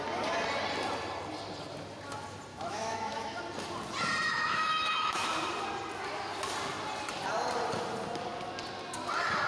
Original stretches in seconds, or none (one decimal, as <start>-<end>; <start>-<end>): 0.0-2.5; 3.4-4.3; 5.3-9.5